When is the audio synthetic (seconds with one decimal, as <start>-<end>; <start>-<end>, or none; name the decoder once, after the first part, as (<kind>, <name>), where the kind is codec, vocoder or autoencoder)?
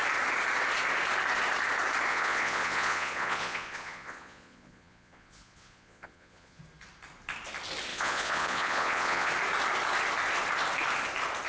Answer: 2.1-6.6 (vocoder, Vocos); 7.9-9.3